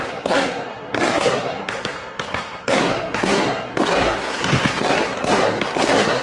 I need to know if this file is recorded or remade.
remade